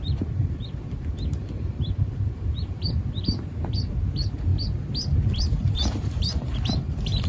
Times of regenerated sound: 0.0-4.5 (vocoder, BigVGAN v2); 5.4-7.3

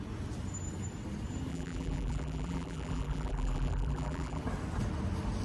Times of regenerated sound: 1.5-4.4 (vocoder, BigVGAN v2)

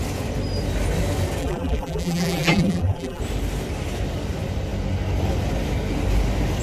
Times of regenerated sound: 1.4-3.2 (vocoder, BigVGAN v2)